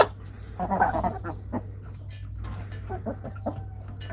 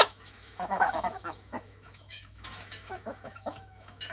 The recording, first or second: first